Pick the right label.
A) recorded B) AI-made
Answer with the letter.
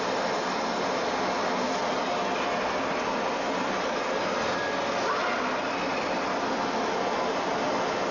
A